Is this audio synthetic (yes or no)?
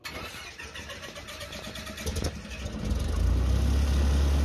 no